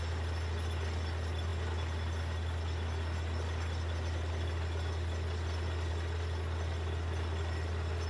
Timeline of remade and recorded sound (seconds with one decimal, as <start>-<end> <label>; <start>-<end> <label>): 0.0-8.1 recorded